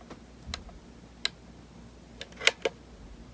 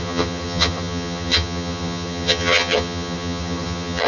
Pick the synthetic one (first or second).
second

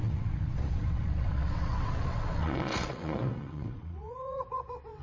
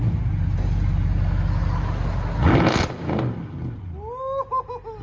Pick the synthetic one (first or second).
first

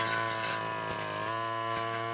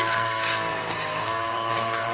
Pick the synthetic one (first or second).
second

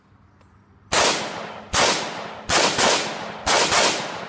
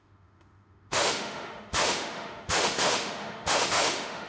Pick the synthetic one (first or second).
second